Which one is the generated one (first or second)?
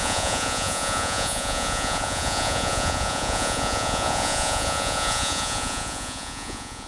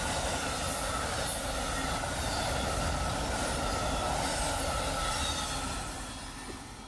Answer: first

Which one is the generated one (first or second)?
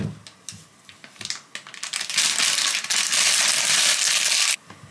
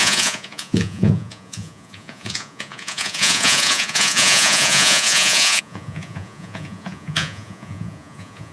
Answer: second